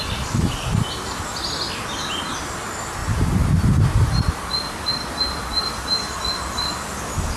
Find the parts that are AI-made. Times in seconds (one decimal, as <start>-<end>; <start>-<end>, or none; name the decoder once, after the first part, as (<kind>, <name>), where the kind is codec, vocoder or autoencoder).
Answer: 3.0-5.1 (vocoder, BigVGAN v2)